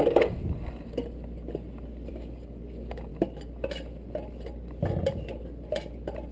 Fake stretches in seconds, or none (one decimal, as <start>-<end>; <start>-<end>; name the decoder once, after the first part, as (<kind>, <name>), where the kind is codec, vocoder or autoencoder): 0.0-0.4 (codec, DAC); 2.1-3.1